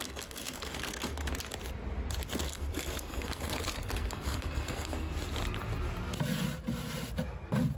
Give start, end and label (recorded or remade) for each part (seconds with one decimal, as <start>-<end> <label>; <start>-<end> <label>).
0.0-1.3 remade; 1.3-2.3 recorded; 2.3-5.1 remade; 5.1-7.8 recorded